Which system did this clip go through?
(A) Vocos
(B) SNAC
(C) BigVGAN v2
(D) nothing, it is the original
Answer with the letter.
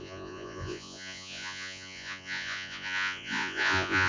A